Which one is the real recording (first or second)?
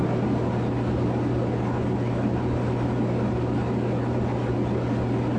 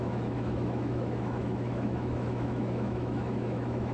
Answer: first